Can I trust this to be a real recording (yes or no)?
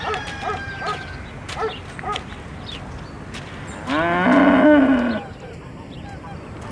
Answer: yes